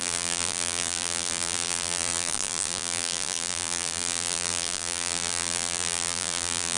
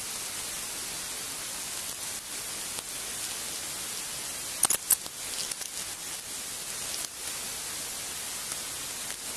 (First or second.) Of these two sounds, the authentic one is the second